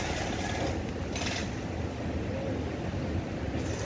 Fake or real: real